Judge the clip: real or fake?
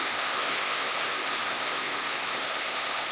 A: fake